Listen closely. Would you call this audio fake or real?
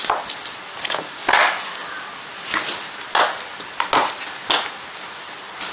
real